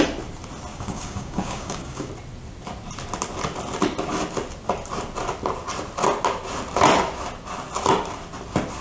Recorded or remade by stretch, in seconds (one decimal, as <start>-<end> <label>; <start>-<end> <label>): 0.0-0.7 recorded; 0.7-2.1 remade; 2.1-8.8 recorded